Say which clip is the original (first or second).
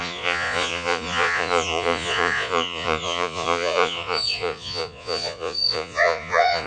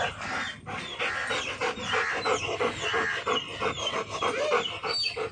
second